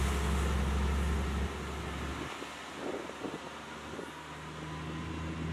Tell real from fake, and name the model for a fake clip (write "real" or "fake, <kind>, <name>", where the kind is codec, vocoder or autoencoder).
real